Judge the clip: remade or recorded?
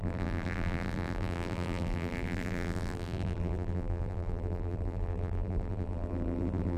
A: remade